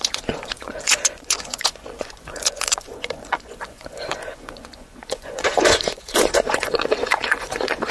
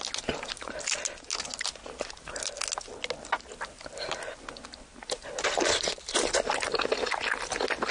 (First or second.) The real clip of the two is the second